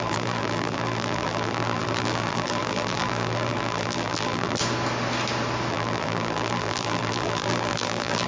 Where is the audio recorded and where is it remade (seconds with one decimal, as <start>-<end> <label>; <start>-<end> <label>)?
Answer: 0.0-4.6 remade; 4.6-5.7 recorded; 5.7-8.3 remade